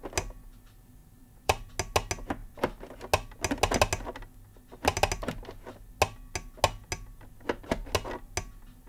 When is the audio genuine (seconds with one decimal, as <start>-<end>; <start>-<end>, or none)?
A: 0.0-1.0; 1.7-8.9